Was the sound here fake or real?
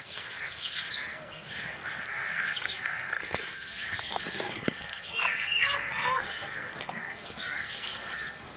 fake